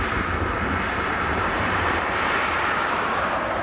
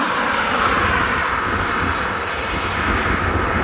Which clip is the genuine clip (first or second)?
second